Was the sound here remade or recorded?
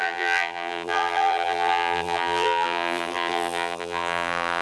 remade